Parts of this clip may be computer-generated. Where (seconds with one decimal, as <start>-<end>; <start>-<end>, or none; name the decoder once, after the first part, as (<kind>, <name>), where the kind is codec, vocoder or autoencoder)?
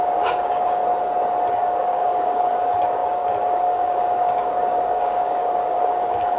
0.0-0.8 (codec, DAC); 1.5-6.4